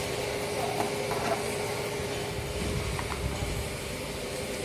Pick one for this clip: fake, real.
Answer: real